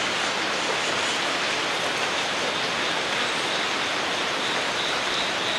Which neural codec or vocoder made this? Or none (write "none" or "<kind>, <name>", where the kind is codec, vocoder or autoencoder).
none